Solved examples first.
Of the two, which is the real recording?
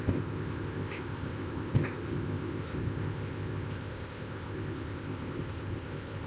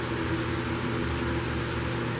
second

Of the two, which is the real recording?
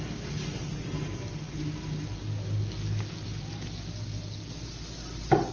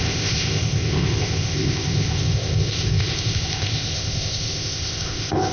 first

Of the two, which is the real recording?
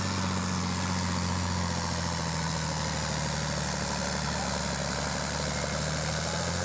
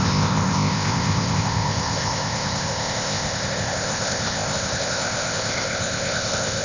first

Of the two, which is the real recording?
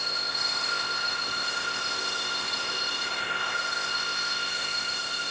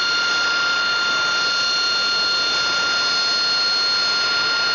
second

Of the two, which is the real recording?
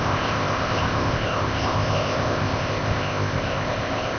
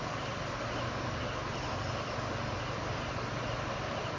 second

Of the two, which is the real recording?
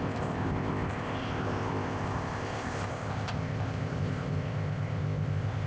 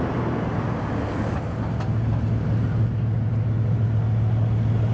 second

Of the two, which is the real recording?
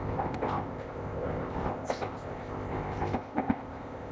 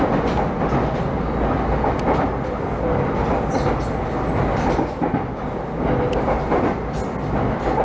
second